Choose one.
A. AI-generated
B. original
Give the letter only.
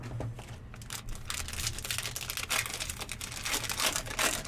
B